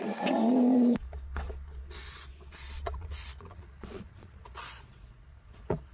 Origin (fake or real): fake